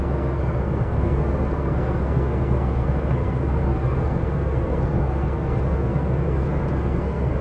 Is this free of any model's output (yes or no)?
no